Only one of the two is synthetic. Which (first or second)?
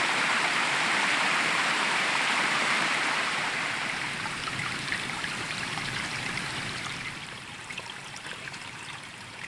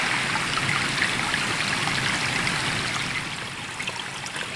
first